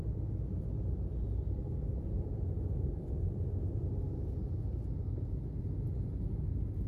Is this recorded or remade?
recorded